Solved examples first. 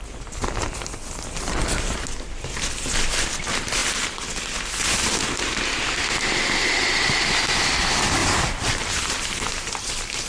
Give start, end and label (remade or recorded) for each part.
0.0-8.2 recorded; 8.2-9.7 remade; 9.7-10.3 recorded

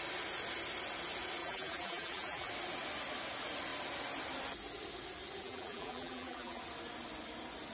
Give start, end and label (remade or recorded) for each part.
0.0-1.4 recorded; 1.4-2.5 remade; 2.5-5.4 recorded; 5.4-6.6 remade; 6.6-7.7 recorded

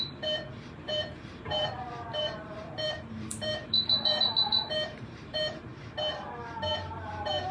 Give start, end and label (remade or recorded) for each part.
0.0-5.7 remade; 5.7-6.7 recorded; 6.7-7.5 remade

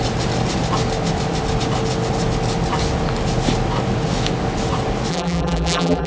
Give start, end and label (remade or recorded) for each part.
0.0-5.1 recorded; 5.1-6.1 remade

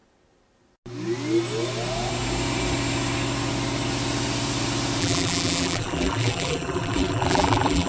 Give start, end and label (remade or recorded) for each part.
0.0-5.0 recorded; 5.0-7.9 remade